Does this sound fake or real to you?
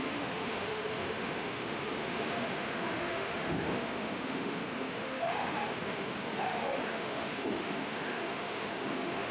fake